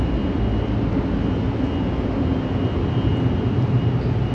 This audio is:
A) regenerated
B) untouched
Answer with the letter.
B